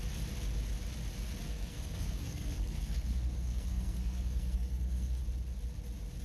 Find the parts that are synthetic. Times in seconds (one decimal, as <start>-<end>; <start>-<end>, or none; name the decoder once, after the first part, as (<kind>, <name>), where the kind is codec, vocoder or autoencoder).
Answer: 1.5-5.2 (codec, SNAC)